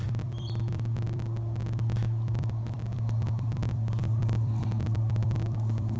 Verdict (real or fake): fake